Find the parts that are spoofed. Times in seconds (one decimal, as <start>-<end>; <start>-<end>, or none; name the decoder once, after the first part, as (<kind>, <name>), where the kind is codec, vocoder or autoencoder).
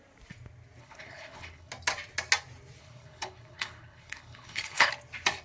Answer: 0.8-1.7 (codec, HILCodec); 2.8-4.9